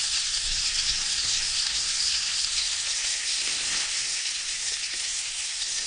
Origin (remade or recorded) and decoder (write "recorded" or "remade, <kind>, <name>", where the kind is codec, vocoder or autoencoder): remade, codec, SNAC